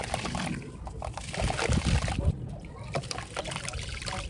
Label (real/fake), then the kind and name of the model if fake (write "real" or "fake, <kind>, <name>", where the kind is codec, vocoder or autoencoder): real